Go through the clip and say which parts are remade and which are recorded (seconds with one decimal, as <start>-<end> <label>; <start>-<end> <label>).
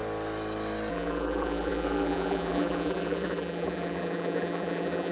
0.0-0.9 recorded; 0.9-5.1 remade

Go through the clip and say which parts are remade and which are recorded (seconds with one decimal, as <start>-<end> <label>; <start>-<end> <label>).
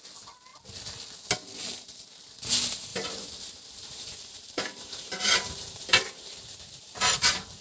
0.0-2.9 recorded; 2.9-7.6 remade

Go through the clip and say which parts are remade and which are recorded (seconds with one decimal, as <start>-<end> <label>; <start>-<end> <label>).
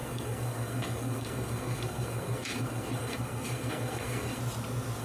0.0-4.4 remade; 4.4-5.0 recorded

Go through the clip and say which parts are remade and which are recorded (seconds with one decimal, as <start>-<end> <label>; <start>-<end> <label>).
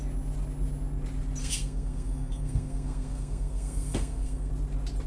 0.0-1.4 recorded; 1.4-4.5 remade; 4.5-5.1 recorded